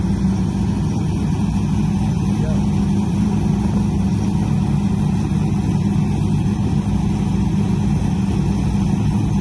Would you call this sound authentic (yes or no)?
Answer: yes